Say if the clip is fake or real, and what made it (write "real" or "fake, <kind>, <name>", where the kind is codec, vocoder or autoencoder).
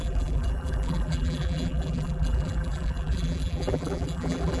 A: fake, vocoder, BigVGAN v2